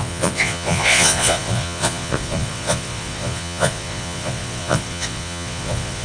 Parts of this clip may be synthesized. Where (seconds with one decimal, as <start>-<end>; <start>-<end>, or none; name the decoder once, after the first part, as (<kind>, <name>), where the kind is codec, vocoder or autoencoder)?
0.0-6.0 (vocoder, Vocos)